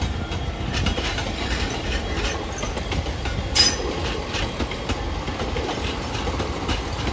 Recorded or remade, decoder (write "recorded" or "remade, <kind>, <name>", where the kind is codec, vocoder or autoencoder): recorded